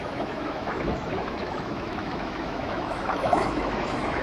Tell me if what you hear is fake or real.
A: fake